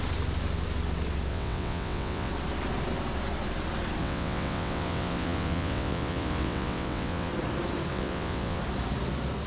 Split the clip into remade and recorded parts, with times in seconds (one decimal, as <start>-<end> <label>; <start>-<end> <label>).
0.0-1.3 recorded; 1.3-2.3 remade; 2.3-4.0 recorded; 4.0-7.3 remade; 7.3-7.9 recorded; 7.9-8.6 remade; 8.6-9.5 recorded